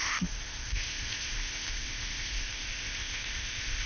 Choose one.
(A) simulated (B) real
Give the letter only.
A